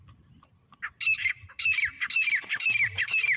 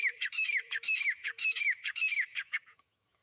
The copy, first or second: second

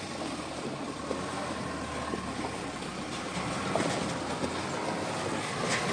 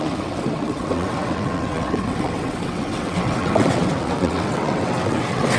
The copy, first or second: second